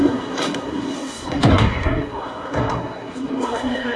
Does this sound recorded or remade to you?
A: remade